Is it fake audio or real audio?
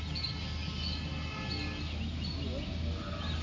real